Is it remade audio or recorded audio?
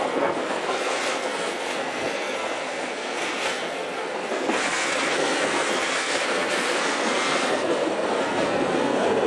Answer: remade